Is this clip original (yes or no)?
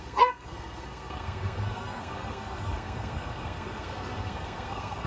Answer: no